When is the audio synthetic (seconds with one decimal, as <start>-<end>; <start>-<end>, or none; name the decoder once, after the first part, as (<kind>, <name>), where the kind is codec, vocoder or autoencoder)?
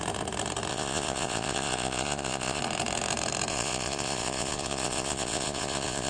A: 0.7-2.6 (vocoder, Vocos); 3.5-6.1